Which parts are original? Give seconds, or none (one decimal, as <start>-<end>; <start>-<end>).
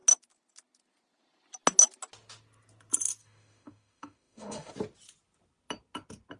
0.0-3.2; 4.7-6.4